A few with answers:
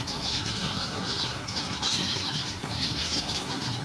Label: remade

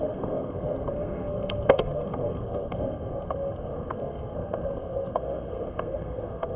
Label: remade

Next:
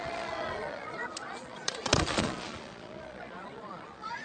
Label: remade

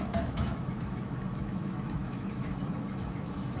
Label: remade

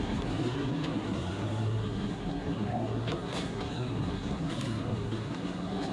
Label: remade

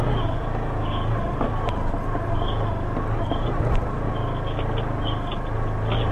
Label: recorded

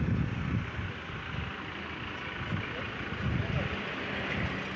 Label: recorded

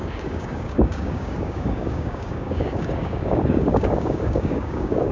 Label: remade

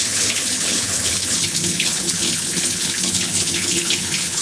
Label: remade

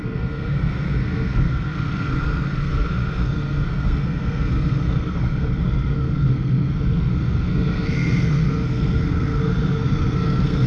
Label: remade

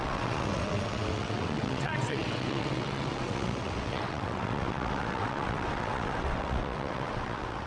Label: remade